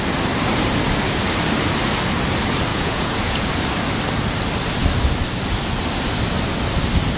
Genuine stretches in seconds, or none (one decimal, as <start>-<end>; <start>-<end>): 0.0-2.7; 3.5-7.2